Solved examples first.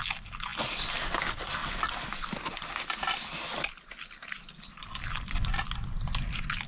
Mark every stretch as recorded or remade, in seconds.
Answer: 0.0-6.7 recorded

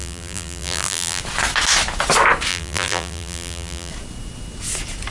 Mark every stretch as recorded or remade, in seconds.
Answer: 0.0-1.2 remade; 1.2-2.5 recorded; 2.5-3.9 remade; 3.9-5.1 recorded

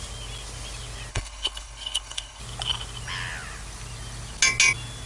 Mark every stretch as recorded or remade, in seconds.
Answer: 0.0-1.1 recorded; 1.1-2.4 remade; 2.4-5.1 recorded

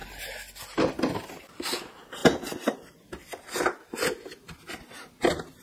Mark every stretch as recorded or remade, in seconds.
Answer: 0.0-1.4 recorded; 1.4-2.2 remade; 2.2-5.6 recorded

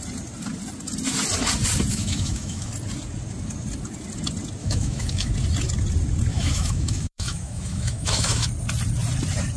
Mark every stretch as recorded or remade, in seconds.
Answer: 0.0-1.9 recorded; 1.9-2.7 remade; 2.7-4.6 recorded; 4.6-5.3 remade; 5.3-6.3 recorded; 6.3-8.5 remade; 8.5-9.6 recorded